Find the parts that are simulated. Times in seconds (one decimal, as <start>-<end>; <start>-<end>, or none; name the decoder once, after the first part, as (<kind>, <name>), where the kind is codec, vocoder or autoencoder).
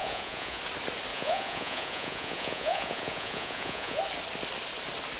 0.0-0.6 (vocoder, Vocos); 1.1-4.0